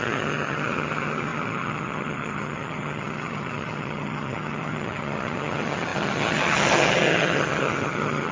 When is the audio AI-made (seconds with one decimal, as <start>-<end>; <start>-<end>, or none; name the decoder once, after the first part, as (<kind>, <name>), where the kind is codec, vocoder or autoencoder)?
0.0-8.3 (vocoder, HiFi-GAN)